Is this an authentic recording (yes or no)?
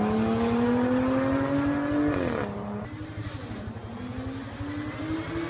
yes